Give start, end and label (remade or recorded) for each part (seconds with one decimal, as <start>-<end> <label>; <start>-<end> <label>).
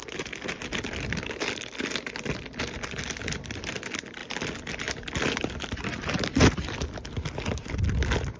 0.0-8.4 recorded